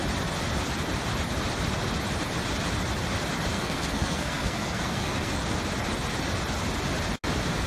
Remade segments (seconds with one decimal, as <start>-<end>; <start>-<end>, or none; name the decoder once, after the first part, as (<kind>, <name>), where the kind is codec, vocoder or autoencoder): 3.5-5.3 (codec, SNAC)